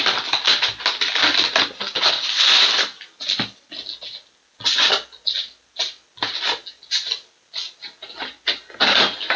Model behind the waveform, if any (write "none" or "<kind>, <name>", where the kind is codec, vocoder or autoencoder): none